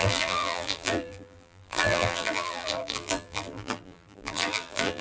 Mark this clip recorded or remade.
remade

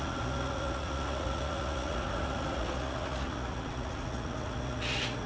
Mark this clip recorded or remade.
remade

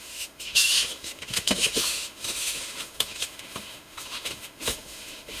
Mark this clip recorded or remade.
remade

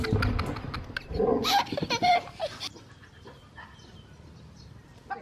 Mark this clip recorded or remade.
recorded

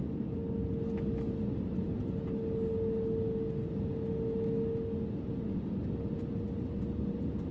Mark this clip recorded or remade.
recorded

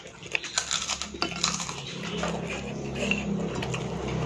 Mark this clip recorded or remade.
recorded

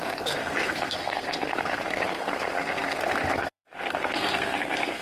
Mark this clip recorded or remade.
remade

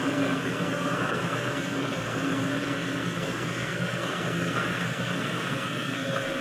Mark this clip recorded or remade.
remade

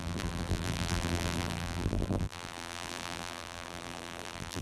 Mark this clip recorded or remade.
remade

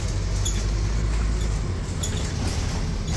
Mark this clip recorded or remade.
recorded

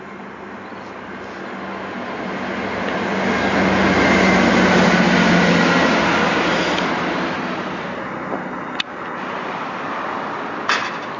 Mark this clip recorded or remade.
recorded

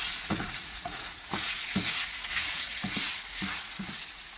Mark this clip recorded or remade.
remade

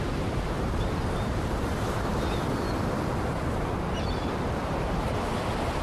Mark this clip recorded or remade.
remade